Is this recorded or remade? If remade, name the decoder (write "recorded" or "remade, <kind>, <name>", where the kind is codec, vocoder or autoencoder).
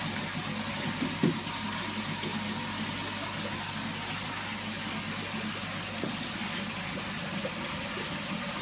recorded